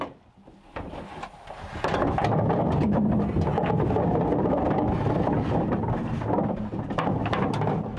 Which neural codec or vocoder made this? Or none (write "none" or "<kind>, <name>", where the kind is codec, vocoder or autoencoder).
none